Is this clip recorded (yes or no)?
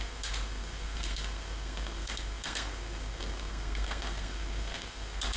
no